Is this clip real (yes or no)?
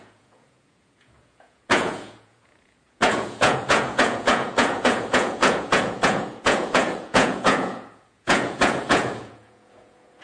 no